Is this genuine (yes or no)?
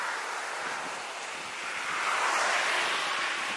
yes